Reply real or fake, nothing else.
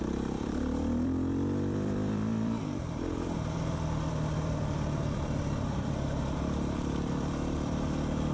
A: fake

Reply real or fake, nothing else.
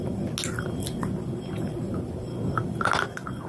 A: real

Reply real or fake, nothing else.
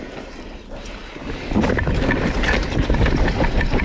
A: real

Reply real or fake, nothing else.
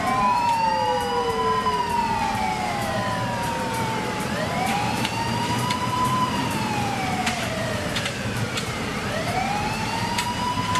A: fake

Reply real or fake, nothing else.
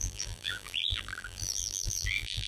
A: fake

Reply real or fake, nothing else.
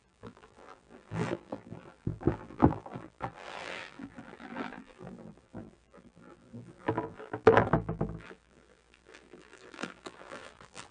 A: fake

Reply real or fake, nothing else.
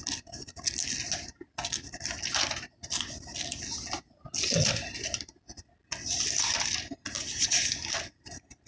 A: real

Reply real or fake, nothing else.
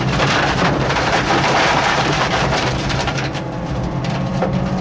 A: fake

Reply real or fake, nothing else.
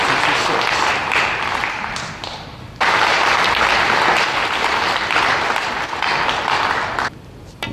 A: real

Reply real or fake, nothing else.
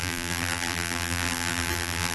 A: fake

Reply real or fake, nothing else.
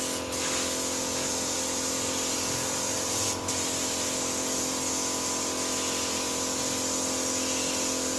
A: real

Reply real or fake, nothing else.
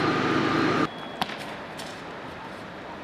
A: real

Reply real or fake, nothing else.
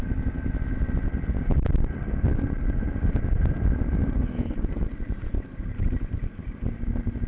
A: real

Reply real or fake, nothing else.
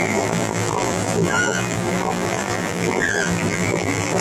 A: fake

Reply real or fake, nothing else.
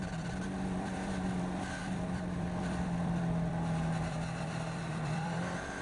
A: fake